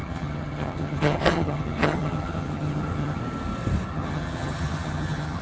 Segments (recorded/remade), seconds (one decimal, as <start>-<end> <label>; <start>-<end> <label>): 0.0-3.2 remade; 3.2-3.9 recorded; 3.9-5.4 remade

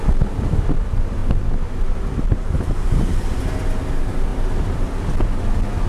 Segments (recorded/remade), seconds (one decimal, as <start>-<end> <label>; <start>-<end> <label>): 0.0-1.2 remade; 1.2-1.8 recorded; 1.8-5.9 remade